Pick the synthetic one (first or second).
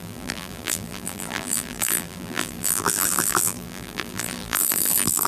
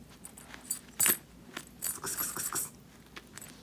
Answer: first